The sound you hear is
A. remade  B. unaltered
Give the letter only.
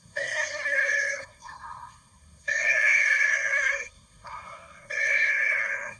A